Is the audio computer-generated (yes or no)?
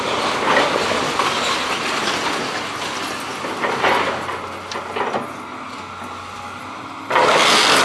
no